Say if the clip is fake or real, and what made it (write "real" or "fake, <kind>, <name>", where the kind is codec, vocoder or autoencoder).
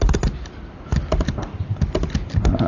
real